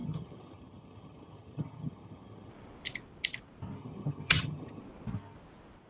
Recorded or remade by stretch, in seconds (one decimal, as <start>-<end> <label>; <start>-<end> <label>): 0.0-2.5 remade; 2.5-3.8 recorded; 3.8-4.8 remade; 4.8-5.9 recorded